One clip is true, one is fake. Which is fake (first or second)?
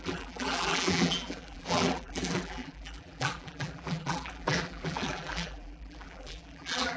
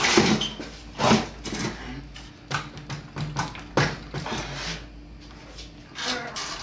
first